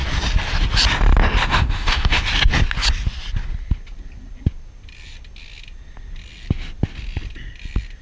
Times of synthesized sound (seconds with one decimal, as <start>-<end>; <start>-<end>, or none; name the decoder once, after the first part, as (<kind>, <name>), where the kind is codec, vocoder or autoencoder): 1.5-2.2 (autoencoder, DAC-VAE)